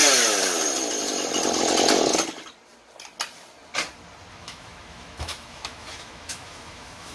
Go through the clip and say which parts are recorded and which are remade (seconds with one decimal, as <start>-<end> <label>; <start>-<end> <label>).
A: 0.0-4.3 recorded; 4.3-7.1 remade